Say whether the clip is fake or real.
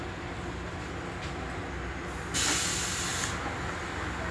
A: real